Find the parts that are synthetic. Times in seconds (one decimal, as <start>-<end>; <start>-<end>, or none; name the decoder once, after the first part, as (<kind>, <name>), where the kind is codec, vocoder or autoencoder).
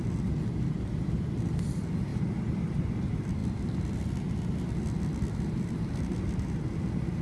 none